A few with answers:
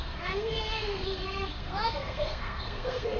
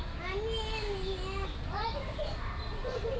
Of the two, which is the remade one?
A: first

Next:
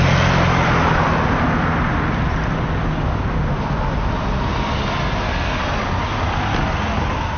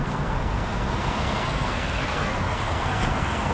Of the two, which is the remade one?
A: second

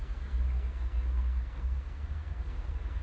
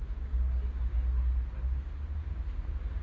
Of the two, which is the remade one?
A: first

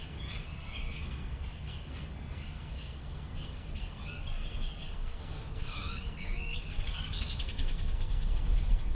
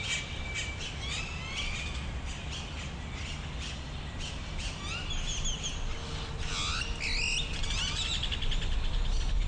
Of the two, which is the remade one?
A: first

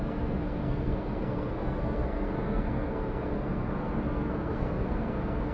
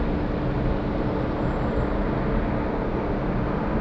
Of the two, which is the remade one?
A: first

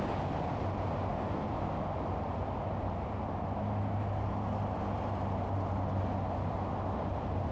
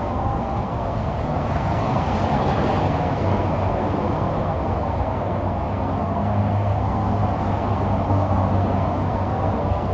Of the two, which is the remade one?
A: second